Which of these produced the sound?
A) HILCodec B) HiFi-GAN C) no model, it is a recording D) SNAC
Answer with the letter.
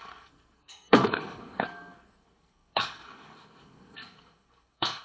D